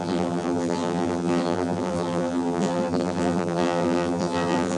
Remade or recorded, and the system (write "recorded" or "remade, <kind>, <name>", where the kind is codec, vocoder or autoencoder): remade, vocoder, BigVGAN v2